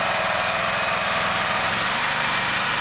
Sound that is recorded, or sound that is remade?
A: remade